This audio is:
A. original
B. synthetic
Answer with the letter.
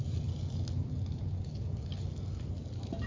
A